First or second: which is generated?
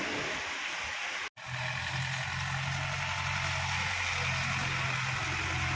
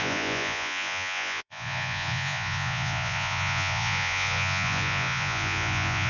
second